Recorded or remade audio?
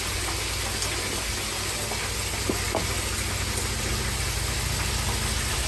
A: recorded